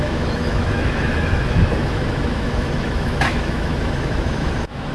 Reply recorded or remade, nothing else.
remade